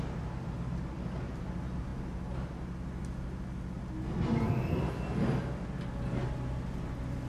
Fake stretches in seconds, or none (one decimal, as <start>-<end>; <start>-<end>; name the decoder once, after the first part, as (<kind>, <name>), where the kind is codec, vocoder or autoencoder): none